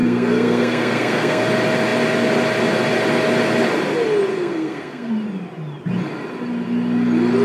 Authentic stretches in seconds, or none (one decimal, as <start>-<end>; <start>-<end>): 1.4-4.3; 5.1-7.4